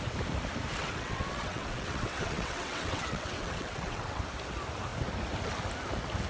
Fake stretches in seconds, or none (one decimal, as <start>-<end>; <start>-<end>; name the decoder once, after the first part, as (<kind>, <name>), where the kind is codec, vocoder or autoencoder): 0.8-4.2 (vocoder, WaveNeXt)